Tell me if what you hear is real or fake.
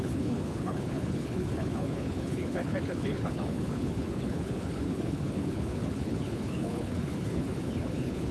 fake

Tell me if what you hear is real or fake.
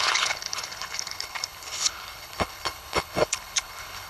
fake